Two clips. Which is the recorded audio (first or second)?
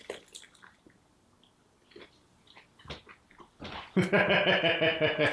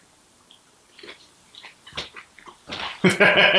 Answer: first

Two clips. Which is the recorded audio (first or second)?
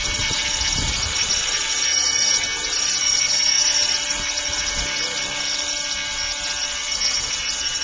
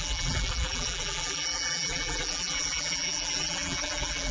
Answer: first